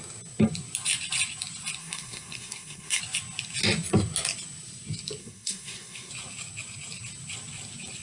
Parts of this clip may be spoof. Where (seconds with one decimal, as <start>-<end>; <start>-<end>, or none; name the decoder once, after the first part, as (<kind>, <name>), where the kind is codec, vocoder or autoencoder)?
1.8-3.0 (codec, SNAC); 5.2-6.1